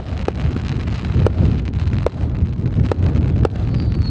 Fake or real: real